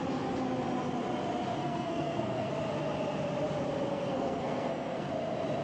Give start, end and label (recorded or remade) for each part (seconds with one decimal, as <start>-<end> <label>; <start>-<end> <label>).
0.0-1.6 recorded; 1.6-2.5 remade; 2.5-3.9 recorded; 3.9-5.1 remade; 5.1-5.6 recorded